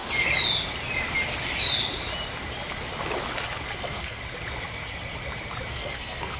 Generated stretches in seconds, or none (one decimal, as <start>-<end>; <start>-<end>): 3.8-4.2; 5.7-6.4